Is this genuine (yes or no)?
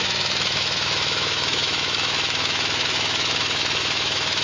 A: no